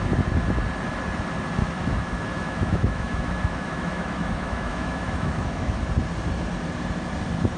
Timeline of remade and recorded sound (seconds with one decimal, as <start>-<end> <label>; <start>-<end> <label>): 0.0-1.6 recorded; 1.6-5.8 remade; 5.8-7.6 recorded